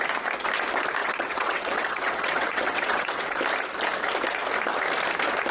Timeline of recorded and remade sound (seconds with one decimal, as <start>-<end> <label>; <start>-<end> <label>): 0.0-1.0 recorded; 1.0-3.4 remade; 3.4-5.5 recorded